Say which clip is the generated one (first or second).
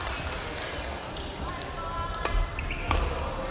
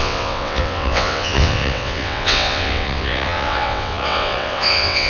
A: second